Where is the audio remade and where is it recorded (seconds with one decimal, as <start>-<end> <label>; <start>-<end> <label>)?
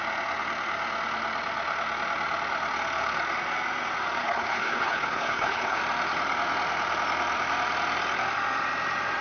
0.0-4.2 recorded; 4.2-5.8 remade; 5.8-9.2 recorded